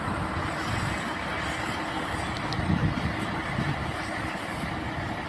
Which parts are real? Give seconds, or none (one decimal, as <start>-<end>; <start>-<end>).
0.0-5.3